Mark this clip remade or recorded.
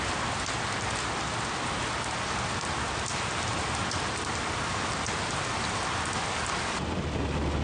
recorded